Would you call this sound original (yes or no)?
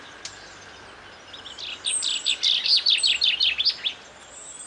yes